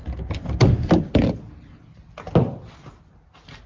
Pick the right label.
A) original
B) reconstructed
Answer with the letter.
A